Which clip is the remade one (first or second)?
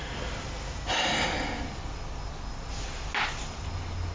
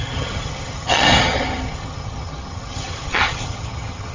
second